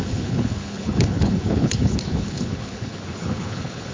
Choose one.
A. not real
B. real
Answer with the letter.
A